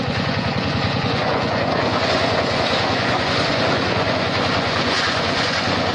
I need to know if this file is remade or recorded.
remade